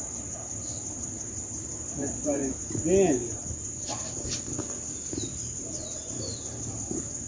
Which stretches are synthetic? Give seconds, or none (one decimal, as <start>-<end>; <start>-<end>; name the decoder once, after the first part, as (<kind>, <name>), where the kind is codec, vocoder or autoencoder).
0.0-2.4 (vocoder, BigVGAN v2); 5.1-6.3